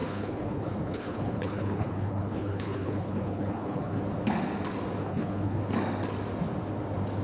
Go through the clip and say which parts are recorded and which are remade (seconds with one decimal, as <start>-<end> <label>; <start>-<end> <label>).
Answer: 0.0-4.0 remade; 4.0-5.0 recorded; 5.0-5.6 remade; 5.6-7.2 recorded